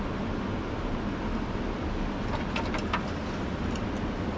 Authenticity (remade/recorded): recorded